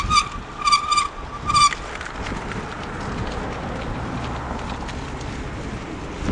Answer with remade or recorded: recorded